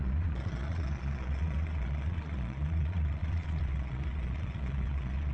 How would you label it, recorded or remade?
remade